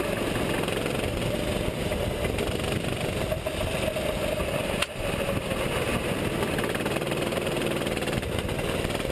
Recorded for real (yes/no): yes